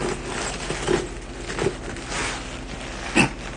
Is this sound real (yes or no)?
yes